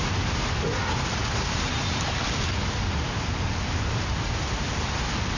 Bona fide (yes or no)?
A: yes